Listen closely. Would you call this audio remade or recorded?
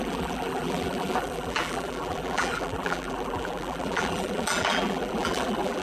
remade